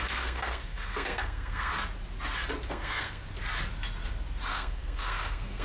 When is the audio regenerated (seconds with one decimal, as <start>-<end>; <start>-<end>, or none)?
0.0-1.7; 2.7-3.2; 4.5-5.6